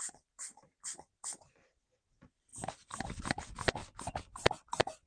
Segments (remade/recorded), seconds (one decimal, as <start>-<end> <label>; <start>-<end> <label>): 0.0-3.8 remade; 3.8-4.5 recorded; 4.5-5.1 remade